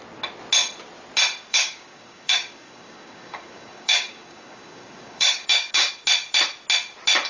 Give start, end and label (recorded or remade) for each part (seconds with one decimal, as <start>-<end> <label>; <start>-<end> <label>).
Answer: 0.0-1.5 recorded; 1.5-5.9 remade; 5.9-7.3 recorded